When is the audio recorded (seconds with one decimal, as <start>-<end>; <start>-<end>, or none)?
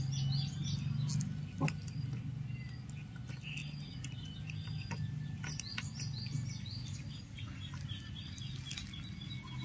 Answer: 0.0-9.6